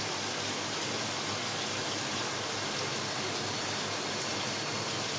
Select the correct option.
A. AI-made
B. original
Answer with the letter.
B